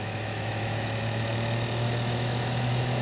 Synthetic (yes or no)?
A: yes